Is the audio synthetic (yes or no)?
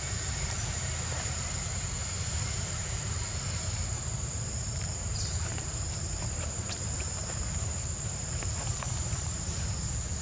yes